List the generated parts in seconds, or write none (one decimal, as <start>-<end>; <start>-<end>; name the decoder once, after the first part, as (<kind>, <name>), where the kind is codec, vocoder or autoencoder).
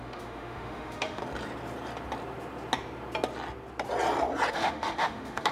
0.0-1.2 (autoencoder, DAC-VAE); 4.5-5.5